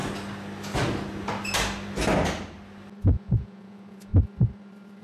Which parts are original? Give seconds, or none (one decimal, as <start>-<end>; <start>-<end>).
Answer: 0.0-3.0; 4.1-5.0